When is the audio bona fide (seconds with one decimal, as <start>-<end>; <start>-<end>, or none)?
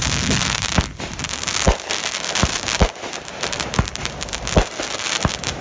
1.5-4.9